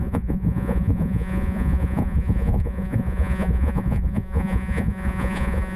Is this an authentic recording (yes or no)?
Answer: no